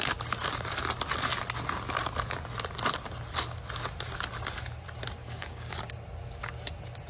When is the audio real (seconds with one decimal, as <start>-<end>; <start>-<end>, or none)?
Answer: 0.0-5.2; 5.8-7.1